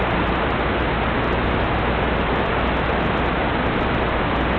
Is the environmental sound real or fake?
real